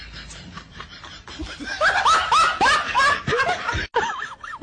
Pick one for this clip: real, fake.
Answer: real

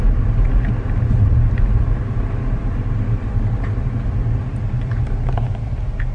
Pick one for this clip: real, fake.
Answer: real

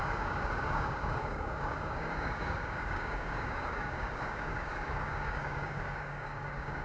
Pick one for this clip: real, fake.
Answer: fake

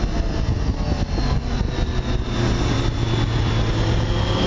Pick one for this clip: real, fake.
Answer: real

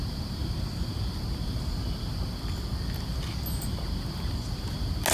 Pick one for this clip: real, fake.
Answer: real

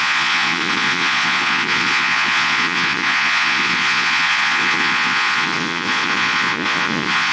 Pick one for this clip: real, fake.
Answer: fake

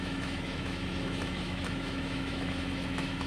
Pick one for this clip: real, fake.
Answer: fake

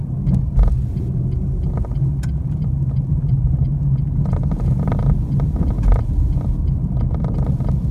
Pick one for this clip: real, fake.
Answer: real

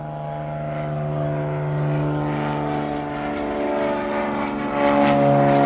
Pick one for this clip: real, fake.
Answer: real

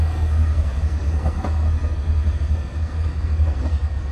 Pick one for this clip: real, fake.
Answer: fake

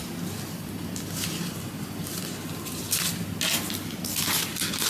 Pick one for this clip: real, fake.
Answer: real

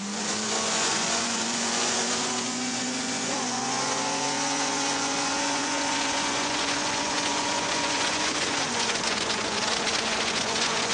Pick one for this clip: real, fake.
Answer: fake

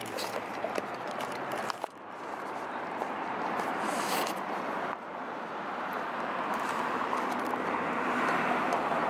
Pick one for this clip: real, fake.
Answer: fake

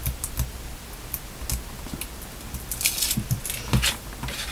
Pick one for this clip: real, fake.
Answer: real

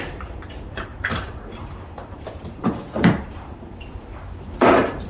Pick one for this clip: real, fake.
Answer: fake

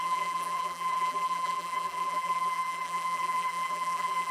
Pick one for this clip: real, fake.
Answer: fake